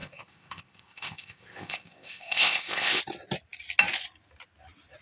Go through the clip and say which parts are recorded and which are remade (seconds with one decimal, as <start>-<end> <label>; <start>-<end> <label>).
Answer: 0.0-3.0 remade; 3.0-5.0 recorded